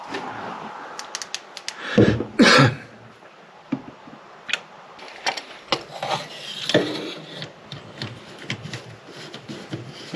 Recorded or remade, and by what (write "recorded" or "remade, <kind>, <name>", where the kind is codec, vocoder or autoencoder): recorded